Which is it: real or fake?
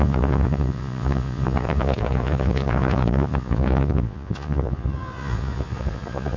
fake